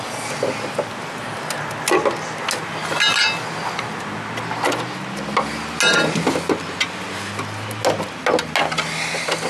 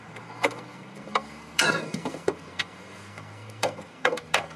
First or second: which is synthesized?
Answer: second